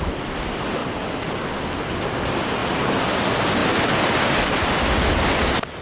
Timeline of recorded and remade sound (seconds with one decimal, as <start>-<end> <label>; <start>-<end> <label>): 0.0-5.8 recorded